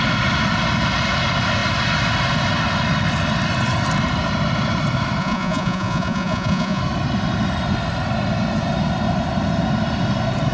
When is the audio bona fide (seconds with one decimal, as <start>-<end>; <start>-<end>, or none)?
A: 0.0-5.2; 6.8-10.5